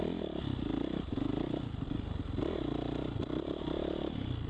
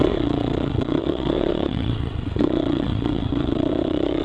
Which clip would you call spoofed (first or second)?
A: second